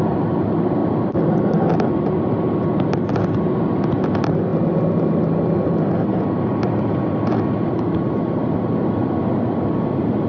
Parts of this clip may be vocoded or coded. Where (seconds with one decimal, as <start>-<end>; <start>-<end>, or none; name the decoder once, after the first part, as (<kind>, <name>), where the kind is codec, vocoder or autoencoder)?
none